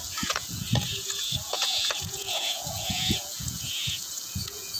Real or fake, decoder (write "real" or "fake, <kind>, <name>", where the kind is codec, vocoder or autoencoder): fake, vocoder, Vocos